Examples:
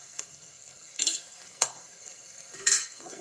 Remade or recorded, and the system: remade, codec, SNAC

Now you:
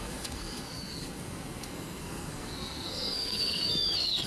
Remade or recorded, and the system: remade, codec, SNAC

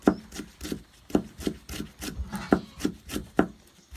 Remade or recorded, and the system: recorded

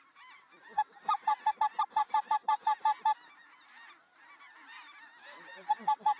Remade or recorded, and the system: recorded